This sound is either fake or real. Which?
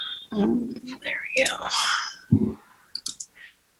real